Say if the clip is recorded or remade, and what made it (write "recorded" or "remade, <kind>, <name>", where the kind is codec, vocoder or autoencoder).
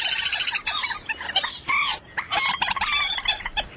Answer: recorded